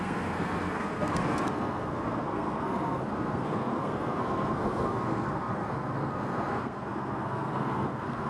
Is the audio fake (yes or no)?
yes